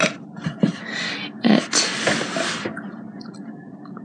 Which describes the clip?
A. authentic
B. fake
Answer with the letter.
A